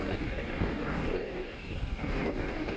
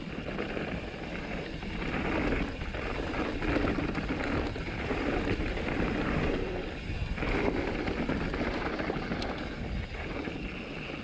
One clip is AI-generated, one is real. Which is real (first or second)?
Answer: second